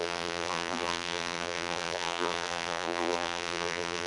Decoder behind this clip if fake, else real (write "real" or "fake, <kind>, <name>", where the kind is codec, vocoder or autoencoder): fake, vocoder, BigVGAN v2